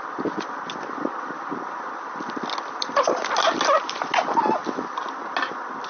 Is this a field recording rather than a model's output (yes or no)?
yes